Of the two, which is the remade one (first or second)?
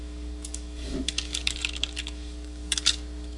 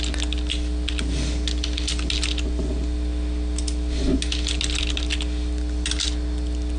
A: first